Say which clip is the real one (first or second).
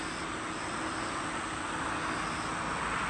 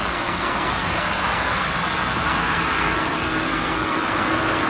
first